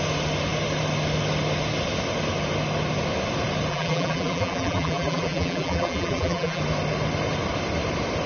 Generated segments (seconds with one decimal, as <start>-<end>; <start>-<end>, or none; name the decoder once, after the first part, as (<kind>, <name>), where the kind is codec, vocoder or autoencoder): 3.7-6.6 (vocoder, BigVGAN v2)